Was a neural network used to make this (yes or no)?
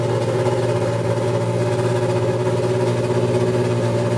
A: no